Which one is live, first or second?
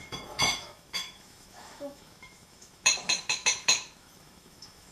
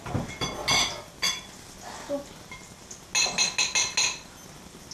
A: second